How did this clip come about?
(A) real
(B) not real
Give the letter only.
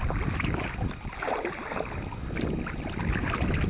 A